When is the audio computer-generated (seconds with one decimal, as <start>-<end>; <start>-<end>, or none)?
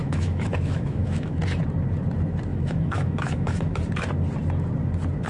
0.0-1.4; 2.5-3.8